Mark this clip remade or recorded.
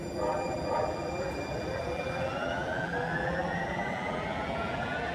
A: remade